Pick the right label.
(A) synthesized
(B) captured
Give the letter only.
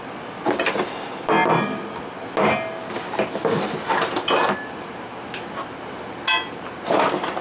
B